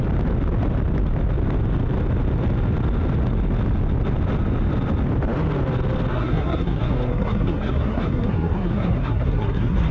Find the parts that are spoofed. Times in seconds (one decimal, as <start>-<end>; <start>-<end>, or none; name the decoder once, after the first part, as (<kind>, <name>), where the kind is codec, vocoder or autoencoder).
6.1-9.9 (codec, SNAC)